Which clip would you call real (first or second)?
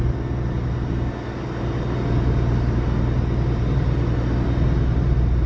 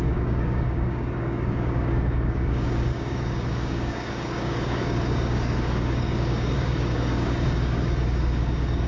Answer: first